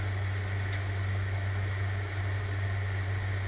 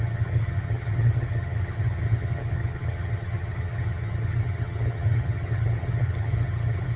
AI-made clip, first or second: second